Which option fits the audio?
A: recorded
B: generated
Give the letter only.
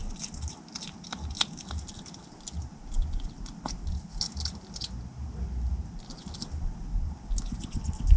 A